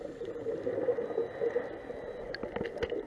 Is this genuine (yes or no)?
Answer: yes